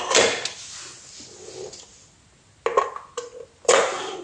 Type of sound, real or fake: real